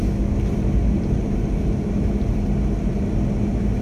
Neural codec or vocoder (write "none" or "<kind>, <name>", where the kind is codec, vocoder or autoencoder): none